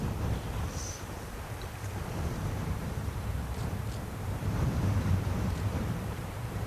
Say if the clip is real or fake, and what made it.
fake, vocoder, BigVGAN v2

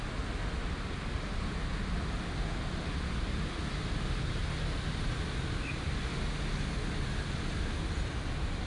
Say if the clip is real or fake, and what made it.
real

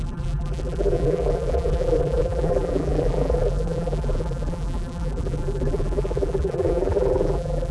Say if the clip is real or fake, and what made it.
fake, vocoder, BigVGAN v2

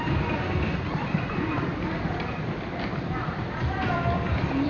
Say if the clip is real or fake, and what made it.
fake, vocoder, BigVGAN v2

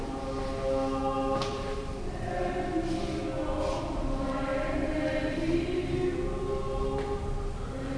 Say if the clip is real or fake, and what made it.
real